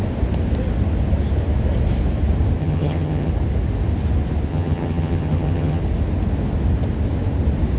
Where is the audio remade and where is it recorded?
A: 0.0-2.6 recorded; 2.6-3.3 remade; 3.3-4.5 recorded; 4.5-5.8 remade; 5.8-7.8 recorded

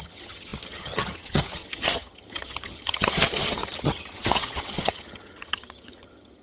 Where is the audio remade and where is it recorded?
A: 0.0-6.4 remade

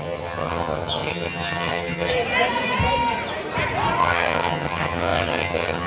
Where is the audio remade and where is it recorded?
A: 0.0-2.1 remade; 2.1-4.0 recorded; 4.0-5.9 remade

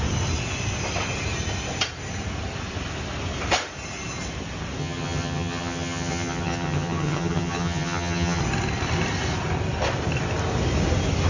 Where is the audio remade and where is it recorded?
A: 0.0-4.8 recorded; 4.8-8.4 remade; 8.4-11.3 recorded

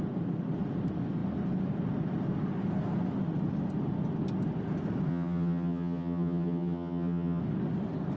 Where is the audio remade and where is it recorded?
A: 0.0-5.1 recorded; 5.1-7.4 remade; 7.4-8.2 recorded

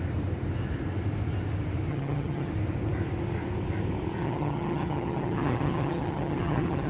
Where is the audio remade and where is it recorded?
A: 0.0-1.9 recorded; 1.9-2.5 remade; 2.5-4.2 recorded; 4.2-6.9 remade

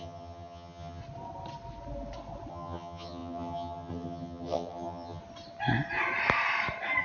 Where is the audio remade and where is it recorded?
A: 0.0-1.0 remade; 1.0-2.5 recorded; 2.5-5.2 remade; 5.2-7.0 recorded

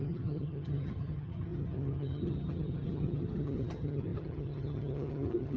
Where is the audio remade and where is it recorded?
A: 0.0-5.6 remade